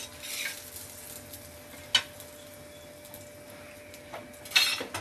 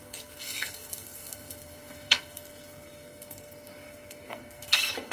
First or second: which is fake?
second